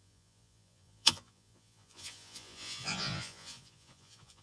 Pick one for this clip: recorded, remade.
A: remade